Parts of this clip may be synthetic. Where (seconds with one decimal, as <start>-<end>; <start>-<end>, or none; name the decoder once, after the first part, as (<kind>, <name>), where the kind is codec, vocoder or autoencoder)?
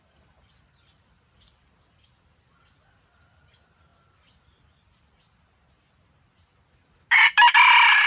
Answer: none